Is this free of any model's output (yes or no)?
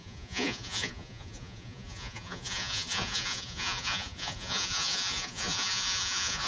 no